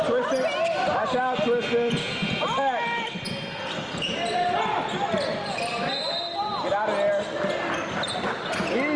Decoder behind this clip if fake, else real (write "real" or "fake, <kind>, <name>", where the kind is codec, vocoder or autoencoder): real